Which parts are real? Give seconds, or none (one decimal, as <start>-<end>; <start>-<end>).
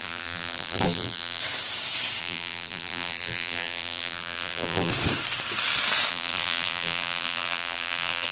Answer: 1.4-2.2; 4.9-6.1